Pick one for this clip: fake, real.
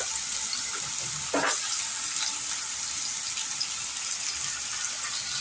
real